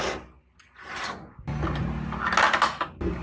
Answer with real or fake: real